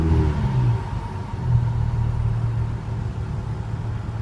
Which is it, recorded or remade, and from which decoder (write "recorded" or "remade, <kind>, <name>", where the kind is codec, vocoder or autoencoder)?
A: recorded